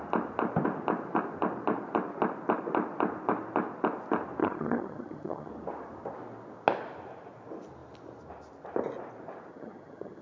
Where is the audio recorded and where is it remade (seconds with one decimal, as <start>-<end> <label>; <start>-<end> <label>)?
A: 0.0-4.4 recorded; 4.4-5.5 remade; 5.5-9.5 recorded; 9.5-10.2 remade